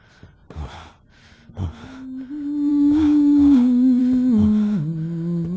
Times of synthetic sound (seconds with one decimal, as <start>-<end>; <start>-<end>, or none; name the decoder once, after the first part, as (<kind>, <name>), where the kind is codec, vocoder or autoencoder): 2.7-4.0 (codec, DAC)